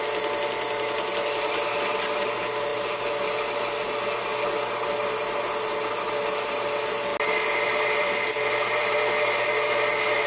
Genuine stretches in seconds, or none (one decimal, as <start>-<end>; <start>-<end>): 0.0-10.3